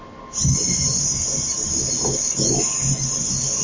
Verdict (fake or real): real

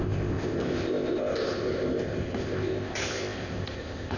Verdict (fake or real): fake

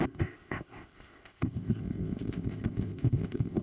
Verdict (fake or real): fake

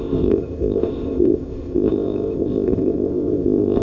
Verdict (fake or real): fake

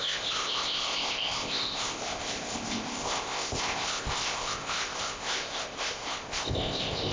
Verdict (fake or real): fake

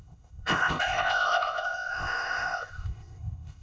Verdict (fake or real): fake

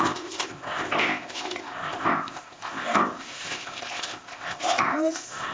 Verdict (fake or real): fake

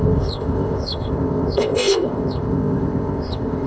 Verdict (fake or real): fake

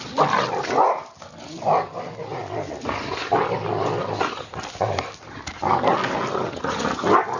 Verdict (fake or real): real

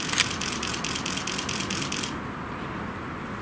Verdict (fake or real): real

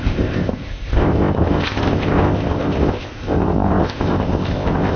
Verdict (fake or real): fake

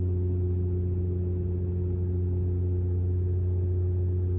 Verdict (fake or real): real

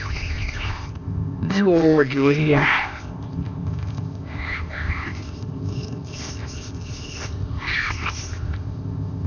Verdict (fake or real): fake